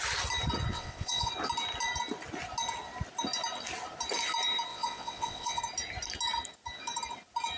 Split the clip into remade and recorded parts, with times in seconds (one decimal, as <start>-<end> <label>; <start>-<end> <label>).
0.0-0.7 recorded; 0.7-1.3 remade; 1.3-4.7 recorded; 4.7-5.6 remade; 5.6-7.6 recorded